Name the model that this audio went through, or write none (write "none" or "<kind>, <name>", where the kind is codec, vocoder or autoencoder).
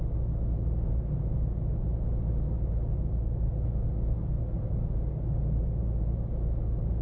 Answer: none